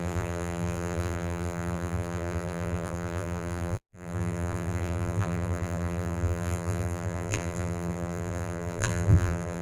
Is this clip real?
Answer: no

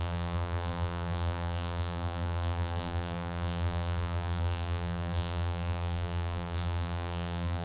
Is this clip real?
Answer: no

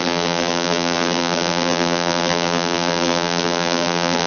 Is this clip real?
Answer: no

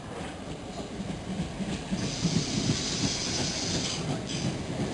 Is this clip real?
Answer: yes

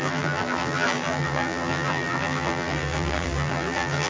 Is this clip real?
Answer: no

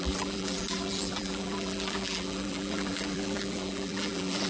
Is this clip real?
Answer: no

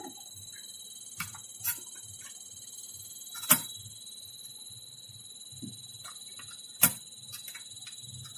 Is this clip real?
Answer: no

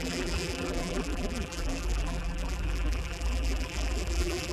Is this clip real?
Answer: no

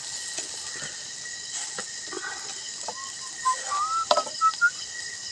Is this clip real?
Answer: yes